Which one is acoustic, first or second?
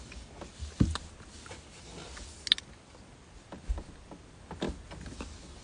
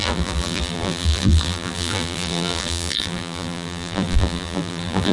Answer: first